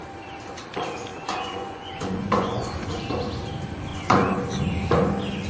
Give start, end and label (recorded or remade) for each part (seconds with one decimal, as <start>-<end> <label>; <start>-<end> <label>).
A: 0.0-1.1 recorded; 1.1-3.0 remade; 3.0-3.9 recorded; 3.9-4.4 remade; 4.4-5.5 recorded